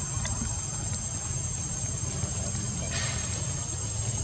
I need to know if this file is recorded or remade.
recorded